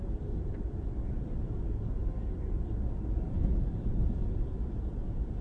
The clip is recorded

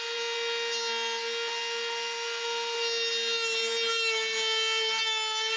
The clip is recorded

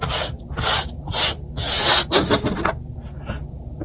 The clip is recorded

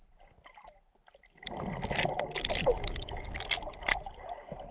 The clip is recorded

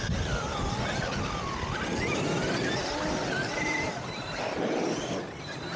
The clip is recorded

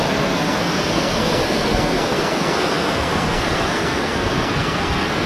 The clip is remade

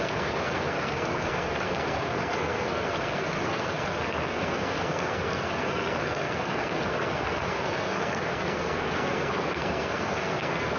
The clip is remade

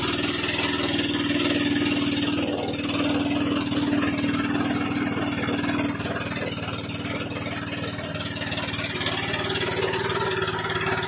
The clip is recorded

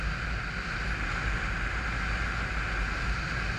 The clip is recorded